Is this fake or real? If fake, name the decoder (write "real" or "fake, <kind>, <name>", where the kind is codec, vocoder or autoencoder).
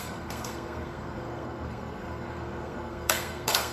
fake, codec, SNAC